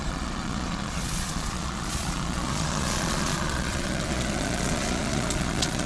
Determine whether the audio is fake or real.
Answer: fake